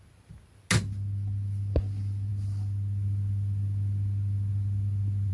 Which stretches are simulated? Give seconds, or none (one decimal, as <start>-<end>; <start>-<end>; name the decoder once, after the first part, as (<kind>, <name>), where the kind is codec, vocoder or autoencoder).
none